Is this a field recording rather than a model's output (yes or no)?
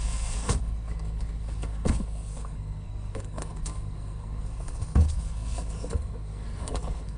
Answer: no